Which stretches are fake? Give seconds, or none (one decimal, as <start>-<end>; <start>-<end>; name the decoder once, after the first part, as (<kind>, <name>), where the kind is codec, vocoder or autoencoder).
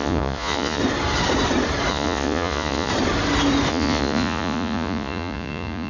0.0-0.8 (vocoder, Vocos); 1.9-2.9; 3.7-5.9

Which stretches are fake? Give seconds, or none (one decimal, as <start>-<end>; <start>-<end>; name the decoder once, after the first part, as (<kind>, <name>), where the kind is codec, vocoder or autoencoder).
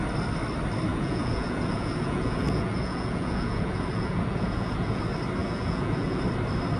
0.9-5.0 (vocoder, Vocos); 5.4-6.2